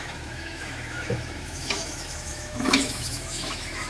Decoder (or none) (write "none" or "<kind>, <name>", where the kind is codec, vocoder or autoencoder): autoencoder, DAC-VAE